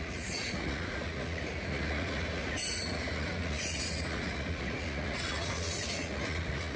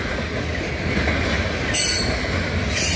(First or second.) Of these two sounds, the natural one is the second